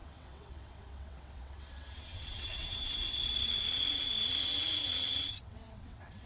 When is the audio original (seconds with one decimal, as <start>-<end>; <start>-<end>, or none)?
none